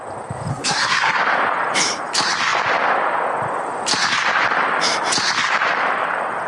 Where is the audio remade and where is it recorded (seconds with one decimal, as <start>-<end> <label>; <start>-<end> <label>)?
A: 0.0-0.5 recorded; 0.5-1.2 remade; 1.2-6.5 recorded